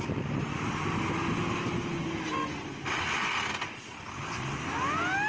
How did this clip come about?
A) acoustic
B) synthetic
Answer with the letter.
A